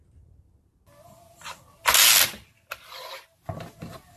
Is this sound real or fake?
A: real